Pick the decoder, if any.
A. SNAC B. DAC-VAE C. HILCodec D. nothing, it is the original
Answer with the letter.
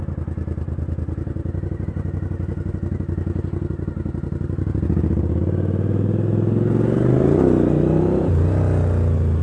D